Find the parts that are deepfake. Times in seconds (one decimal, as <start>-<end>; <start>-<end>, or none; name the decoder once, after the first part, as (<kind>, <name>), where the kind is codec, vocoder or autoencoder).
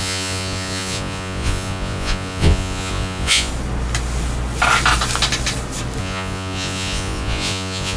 0.0-3.5 (vocoder, Vocos); 6.0-8.0